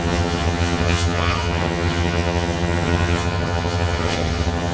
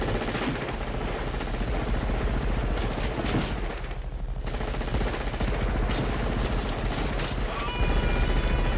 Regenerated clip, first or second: first